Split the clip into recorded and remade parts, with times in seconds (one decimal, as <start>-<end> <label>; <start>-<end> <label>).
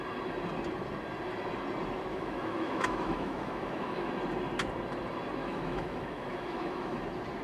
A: 0.0-2.1 recorded; 2.1-4.1 remade; 4.1-5.4 recorded; 5.4-7.0 remade; 7.0-7.4 recorded